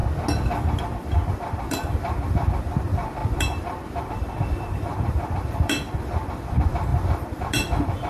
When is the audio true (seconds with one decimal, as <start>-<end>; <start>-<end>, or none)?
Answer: 0.0-0.8